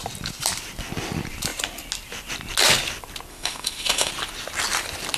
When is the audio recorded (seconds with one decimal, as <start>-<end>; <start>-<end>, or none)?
0.0-3.3; 4.1-5.2